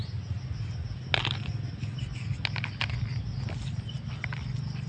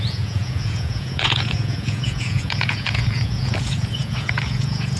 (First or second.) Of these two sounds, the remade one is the second